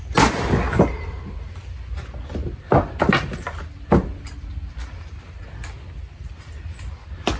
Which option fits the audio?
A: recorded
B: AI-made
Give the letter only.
A